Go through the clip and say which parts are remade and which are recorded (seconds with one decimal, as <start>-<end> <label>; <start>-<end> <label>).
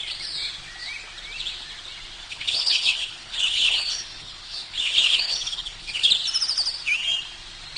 0.0-2.2 recorded; 2.2-6.1 remade; 6.1-7.8 recorded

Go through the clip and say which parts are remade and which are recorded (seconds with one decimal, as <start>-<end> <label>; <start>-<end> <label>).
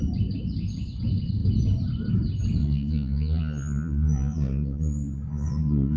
0.0-2.6 recorded; 2.6-6.0 remade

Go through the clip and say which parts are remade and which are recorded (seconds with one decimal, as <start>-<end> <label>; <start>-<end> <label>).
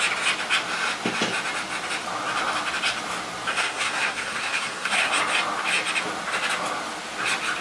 0.0-3.5 recorded; 3.5-5.1 remade; 5.1-7.6 recorded